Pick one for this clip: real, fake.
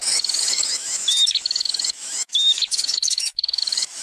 fake